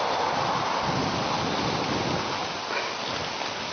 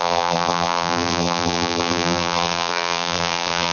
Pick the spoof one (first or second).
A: second